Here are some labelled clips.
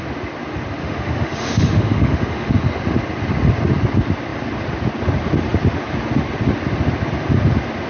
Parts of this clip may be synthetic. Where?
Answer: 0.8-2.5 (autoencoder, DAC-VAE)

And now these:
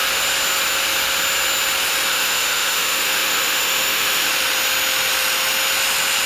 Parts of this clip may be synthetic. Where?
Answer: 2.1-4.3 (autoencoder, DAC-VAE)